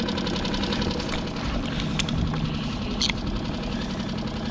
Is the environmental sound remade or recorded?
recorded